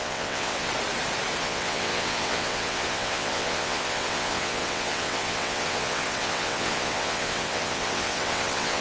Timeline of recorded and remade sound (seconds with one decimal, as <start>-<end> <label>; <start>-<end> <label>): 0.0-0.7 remade; 0.7-1.4 recorded; 1.4-8.8 remade